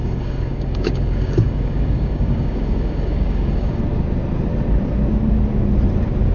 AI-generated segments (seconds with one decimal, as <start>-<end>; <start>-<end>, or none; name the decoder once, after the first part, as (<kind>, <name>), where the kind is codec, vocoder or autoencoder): 0.0-3.8 (codec, DAC)